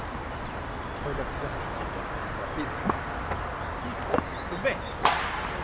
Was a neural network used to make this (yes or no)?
no